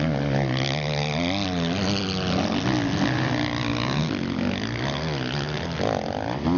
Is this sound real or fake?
real